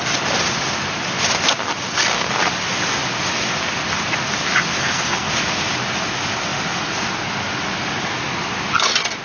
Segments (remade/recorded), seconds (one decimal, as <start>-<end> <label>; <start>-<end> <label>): 0.0-4.8 recorded; 4.8-5.3 remade; 5.3-9.2 recorded